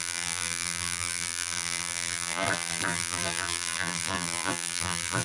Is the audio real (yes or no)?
no